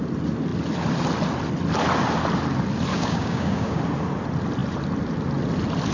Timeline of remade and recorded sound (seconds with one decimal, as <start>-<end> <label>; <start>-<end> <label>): 0.0-2.9 recorded; 2.9-3.8 remade; 3.8-5.9 recorded